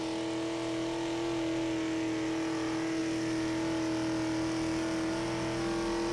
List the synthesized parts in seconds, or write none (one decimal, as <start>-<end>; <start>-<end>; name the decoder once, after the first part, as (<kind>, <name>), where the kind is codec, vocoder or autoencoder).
none